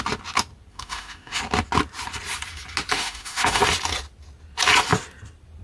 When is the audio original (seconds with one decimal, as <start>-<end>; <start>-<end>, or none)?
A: 0.0-0.7; 1.4-2.9; 3.6-5.6